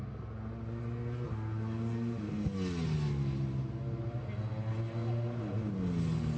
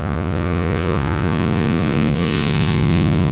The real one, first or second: first